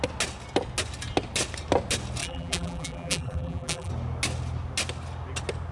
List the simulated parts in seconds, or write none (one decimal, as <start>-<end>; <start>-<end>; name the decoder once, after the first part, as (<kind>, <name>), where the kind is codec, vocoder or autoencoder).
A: 2.2-3.9 (vocoder, BigVGAN v2)